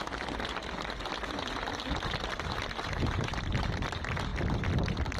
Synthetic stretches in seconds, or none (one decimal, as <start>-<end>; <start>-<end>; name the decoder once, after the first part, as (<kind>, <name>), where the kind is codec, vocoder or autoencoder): 0.0-5.2 (vocoder, BigVGAN v2)